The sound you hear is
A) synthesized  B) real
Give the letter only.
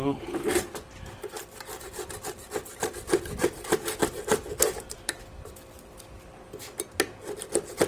B